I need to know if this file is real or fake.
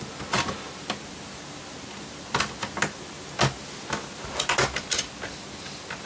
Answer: real